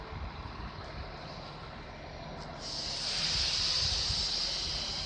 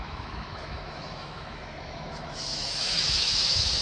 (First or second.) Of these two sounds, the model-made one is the second